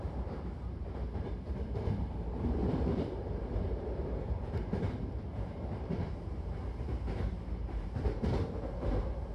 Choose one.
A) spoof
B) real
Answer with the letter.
A